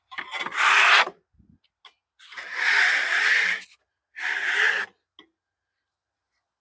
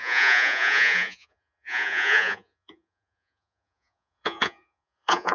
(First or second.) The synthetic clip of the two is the second